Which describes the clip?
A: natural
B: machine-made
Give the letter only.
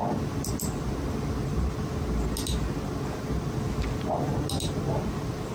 A